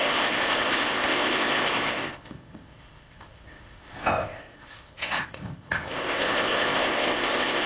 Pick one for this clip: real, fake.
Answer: fake